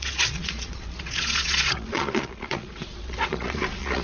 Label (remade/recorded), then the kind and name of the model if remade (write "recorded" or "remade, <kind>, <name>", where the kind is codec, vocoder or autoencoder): remade, vocoder, Vocos